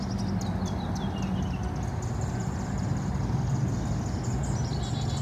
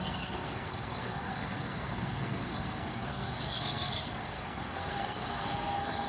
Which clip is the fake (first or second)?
second